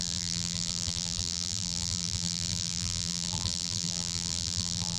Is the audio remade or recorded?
remade